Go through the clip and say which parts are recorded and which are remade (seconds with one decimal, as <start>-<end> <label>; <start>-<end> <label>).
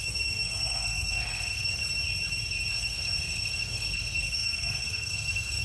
0.0-1.8 remade; 1.8-2.7 recorded; 2.7-5.6 remade